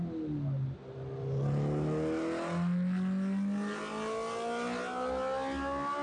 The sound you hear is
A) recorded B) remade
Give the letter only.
A